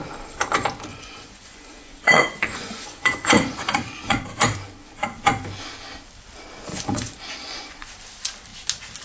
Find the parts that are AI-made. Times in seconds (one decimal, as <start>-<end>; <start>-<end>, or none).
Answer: 0.9-4.2; 6.7-7.9